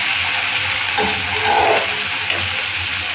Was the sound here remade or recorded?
recorded